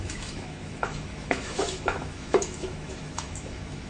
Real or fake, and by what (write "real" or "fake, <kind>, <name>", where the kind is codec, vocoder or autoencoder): fake, autoencoder, DAC-VAE